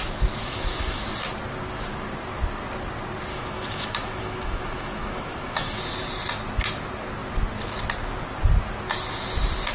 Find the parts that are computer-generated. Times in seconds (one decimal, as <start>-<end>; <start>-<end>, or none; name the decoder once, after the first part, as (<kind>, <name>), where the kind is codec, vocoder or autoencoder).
0.4-1.0 (autoencoder, DAC-VAE); 3.3-5.8